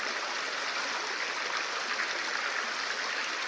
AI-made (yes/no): no